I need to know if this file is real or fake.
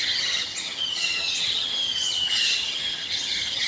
fake